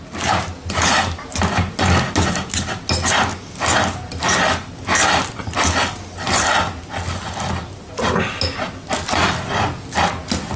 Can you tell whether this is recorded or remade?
recorded